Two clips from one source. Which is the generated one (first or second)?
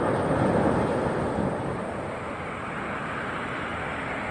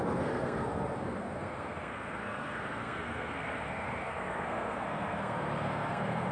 second